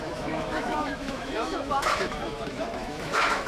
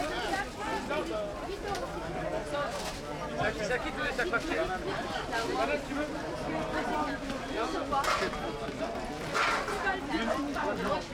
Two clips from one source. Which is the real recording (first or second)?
second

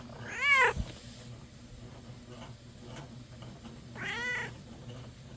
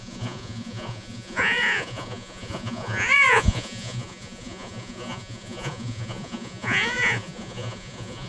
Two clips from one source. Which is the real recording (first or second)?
first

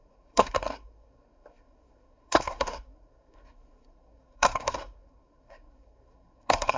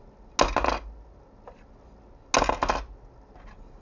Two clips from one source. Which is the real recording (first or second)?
second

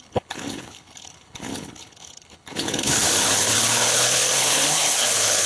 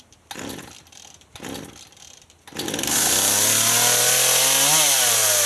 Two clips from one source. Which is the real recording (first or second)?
second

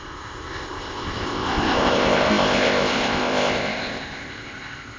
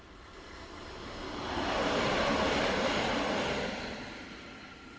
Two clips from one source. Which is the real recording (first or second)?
second